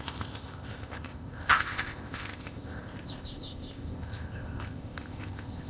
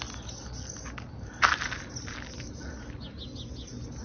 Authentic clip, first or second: second